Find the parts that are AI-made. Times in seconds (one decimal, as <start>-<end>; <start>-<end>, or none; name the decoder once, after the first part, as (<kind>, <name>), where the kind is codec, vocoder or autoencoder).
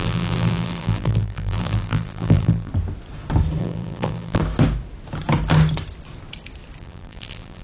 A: 0.0-2.7 (vocoder, BigVGAN v2); 3.6-4.4; 6.8-7.6